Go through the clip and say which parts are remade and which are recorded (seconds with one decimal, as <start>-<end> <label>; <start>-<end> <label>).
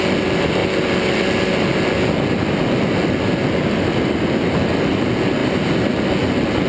0.0-6.7 recorded